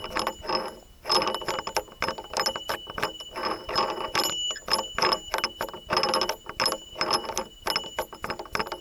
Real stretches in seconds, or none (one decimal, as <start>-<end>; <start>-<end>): 0.0-8.8